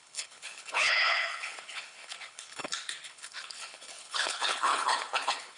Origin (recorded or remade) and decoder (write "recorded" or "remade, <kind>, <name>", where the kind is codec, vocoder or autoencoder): remade, codec, HILCodec